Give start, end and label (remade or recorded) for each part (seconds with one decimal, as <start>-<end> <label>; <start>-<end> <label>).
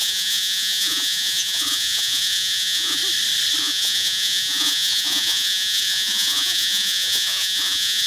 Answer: 0.0-3.0 remade; 3.0-3.6 recorded; 3.6-8.1 remade